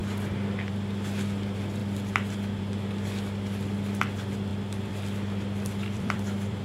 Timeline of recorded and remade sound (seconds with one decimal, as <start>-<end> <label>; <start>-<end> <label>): 0.0-4.5 recorded; 4.5-6.6 remade